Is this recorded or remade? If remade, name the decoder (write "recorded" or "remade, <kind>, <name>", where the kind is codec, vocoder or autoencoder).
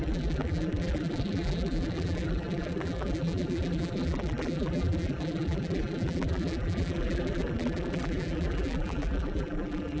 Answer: remade, vocoder, BigVGAN v2